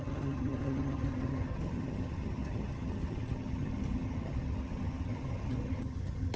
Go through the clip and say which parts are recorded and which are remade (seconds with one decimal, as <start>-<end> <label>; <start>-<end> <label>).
0.0-6.4 remade

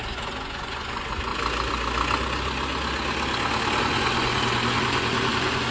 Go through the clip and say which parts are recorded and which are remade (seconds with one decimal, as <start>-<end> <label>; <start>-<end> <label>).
0.0-1.3 remade; 1.3-3.8 recorded; 3.8-5.7 remade

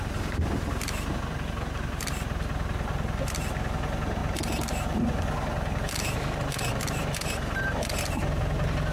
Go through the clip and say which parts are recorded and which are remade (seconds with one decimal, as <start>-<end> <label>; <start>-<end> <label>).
0.0-8.9 recorded

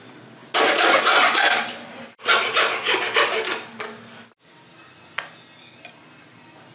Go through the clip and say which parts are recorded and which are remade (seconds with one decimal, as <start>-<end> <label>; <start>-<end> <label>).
0.0-6.7 recorded